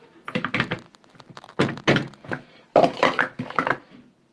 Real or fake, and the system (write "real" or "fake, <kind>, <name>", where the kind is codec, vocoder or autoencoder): real